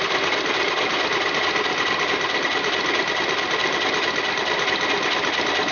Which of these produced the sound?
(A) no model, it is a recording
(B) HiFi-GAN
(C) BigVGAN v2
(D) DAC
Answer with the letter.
A